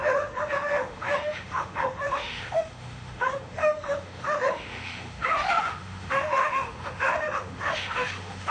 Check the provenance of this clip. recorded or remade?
remade